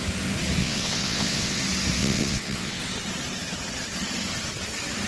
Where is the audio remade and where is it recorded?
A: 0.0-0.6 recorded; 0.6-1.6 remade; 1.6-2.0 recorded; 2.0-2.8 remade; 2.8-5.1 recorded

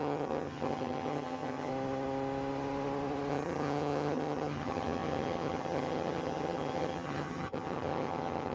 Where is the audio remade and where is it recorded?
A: 0.0-1.7 remade; 1.7-3.3 recorded; 3.3-8.5 remade

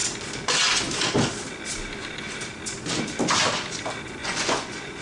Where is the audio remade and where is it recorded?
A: 0.0-4.2 recorded; 4.2-5.0 remade

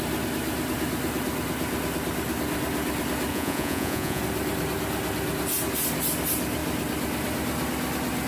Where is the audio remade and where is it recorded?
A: 0.0-3.3 recorded; 3.3-4.2 remade; 4.2-8.3 recorded